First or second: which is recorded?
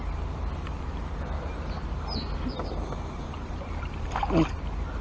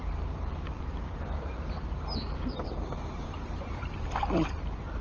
first